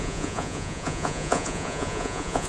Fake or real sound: fake